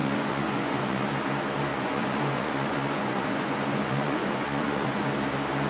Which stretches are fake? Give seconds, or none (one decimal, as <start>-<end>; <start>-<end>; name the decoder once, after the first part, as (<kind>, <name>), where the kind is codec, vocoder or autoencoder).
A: 0.0-1.1 (vocoder, Vocos); 1.7-5.1